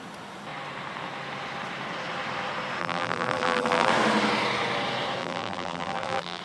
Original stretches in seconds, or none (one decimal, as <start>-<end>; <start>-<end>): 0.0-2.8; 3.9-5.2